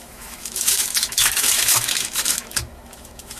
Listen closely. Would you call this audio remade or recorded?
remade